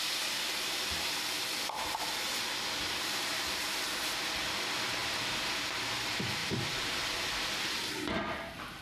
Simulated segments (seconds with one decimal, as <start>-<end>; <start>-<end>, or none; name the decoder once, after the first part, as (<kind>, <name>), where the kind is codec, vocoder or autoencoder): 0.0-8.8 (vocoder, BigVGAN v2)